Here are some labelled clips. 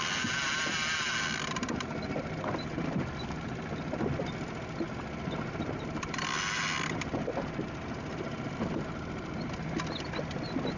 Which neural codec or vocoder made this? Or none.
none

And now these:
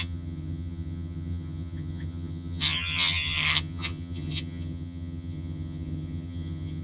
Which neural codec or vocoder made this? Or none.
vocoder, HiFi-GAN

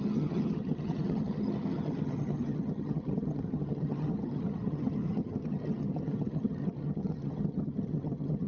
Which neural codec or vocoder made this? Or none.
vocoder, HiFi-GAN